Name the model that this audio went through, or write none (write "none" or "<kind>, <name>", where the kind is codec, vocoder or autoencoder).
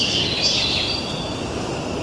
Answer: none